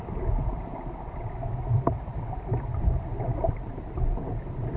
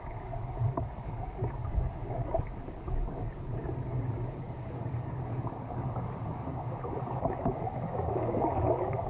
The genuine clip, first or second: first